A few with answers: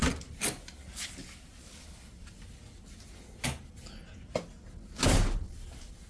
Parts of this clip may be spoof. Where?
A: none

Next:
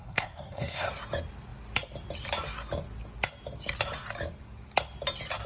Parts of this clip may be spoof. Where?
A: 0.0-0.9 (codec, SNAC)

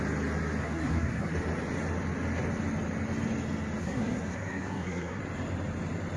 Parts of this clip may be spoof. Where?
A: 0.6-1.3 (codec, SNAC); 3.8-5.2